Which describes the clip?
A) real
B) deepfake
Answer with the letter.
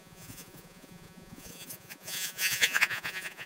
B